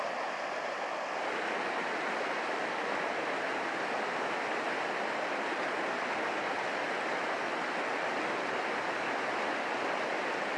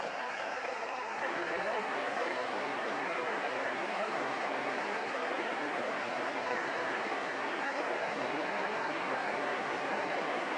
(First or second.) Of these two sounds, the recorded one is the first